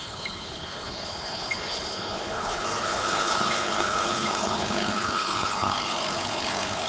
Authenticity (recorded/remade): remade